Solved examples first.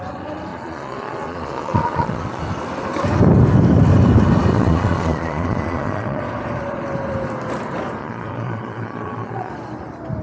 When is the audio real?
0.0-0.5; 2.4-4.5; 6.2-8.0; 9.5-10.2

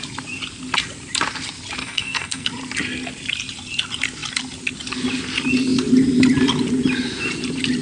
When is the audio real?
0.0-1.8; 2.5-7.8

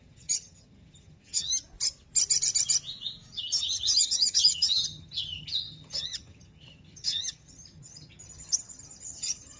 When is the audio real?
1.5-3.4

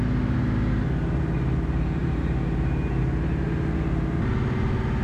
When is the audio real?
0.0-5.0